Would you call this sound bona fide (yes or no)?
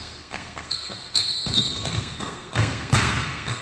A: no